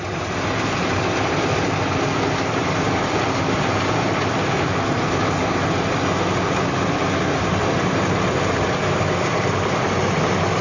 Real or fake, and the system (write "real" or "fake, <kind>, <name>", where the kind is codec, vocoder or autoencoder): real